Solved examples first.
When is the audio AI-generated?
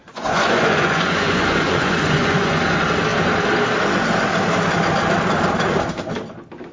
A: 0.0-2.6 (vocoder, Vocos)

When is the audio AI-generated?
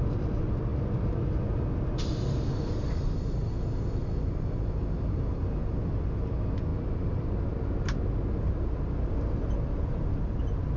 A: none